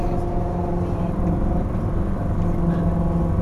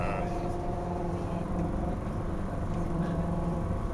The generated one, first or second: second